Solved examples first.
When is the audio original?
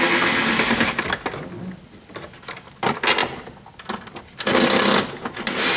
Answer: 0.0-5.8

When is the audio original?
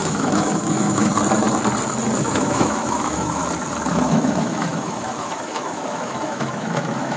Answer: 1.1-2.2; 3.4-3.9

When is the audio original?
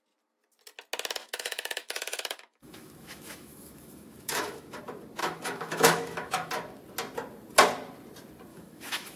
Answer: 0.0-1.2; 4.8-5.2; 6.5-8.5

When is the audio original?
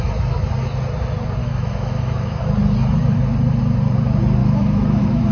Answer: 0.0-1.4; 2.4-4.4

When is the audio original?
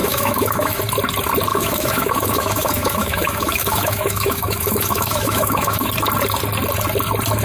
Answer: 0.8-1.5; 5.9-7.4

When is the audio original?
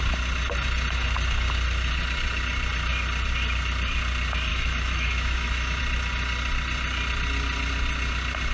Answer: 0.0-4.5; 5.8-8.5